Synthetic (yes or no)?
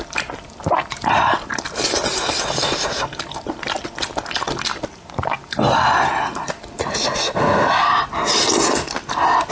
no